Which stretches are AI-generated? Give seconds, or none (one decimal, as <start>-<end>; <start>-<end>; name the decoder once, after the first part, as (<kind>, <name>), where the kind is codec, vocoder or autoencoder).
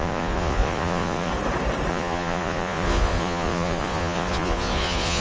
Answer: 0.0-1.3 (vocoder, Vocos); 1.9-5.2